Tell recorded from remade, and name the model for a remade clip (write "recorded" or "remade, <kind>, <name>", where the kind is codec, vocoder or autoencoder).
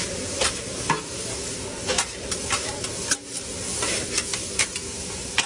recorded